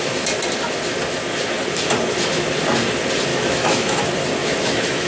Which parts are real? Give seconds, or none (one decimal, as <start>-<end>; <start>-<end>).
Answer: 0.0-3.3; 4.0-4.4